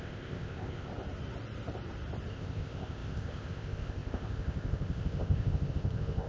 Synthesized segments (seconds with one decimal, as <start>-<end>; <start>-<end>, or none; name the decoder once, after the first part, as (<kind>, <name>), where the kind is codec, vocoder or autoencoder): 0.0-0.9 (codec, ZipCodec); 2.3-6.3